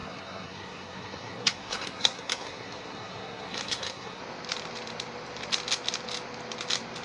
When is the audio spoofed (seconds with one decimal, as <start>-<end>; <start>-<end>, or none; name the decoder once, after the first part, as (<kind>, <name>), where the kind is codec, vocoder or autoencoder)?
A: 0.0-4.2 (codec, SNAC)